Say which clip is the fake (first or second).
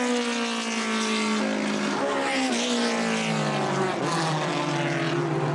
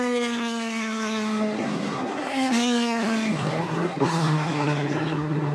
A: second